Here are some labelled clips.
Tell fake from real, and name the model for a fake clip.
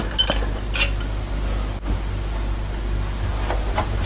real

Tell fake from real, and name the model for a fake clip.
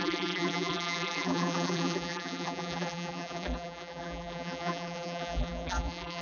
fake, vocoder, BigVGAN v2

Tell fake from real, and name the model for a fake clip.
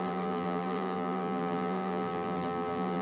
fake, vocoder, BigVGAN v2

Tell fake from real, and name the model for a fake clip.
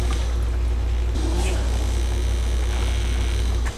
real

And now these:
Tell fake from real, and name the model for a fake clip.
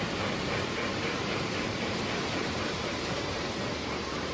fake, vocoder, BigVGAN v2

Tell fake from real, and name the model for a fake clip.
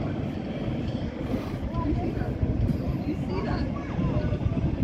real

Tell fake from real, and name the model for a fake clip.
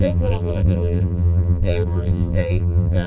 fake, vocoder, BigVGAN v2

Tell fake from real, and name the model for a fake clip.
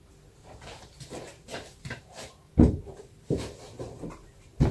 fake, vocoder, BigVGAN v2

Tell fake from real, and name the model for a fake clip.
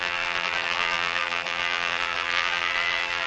fake, vocoder, BigVGAN v2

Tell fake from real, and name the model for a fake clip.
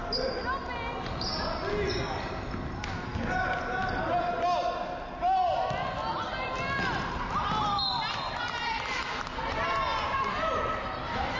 real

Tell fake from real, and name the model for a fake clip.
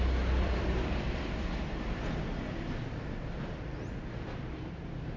fake, vocoder, BigVGAN v2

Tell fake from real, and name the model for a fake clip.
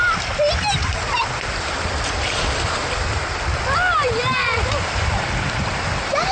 fake, vocoder, BigVGAN v2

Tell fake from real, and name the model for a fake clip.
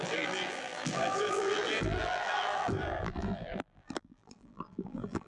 fake, vocoder, BigVGAN v2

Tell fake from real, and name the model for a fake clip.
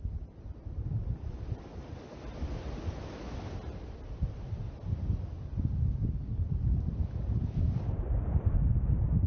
real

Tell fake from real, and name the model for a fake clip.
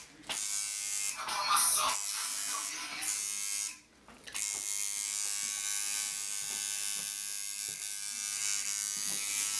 real